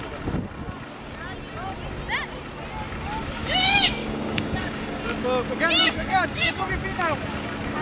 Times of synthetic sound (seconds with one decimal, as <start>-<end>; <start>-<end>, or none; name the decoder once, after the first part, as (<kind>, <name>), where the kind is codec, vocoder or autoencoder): 3.4-5.0 (codec, DAC); 5.8-6.6